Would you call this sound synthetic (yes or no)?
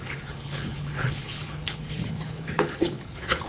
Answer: yes